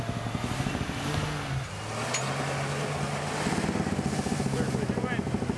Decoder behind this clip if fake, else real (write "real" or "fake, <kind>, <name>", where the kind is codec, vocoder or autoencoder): real